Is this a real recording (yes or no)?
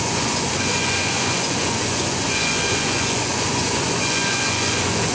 no